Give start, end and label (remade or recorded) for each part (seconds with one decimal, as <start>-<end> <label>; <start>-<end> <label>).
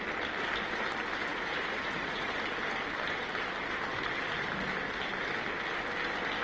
0.0-1.3 recorded; 1.3-2.3 remade; 2.3-6.4 recorded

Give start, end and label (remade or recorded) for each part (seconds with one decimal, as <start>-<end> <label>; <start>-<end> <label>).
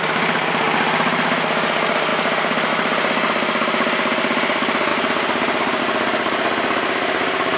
0.0-7.6 recorded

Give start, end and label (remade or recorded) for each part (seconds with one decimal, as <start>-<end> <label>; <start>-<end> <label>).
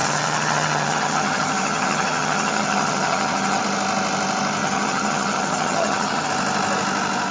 0.0-3.6 remade; 3.6-4.6 recorded; 4.6-6.3 remade; 6.3-7.3 recorded